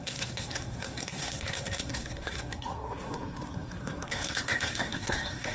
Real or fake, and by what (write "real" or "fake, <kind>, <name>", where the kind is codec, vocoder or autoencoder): fake, codec, SNAC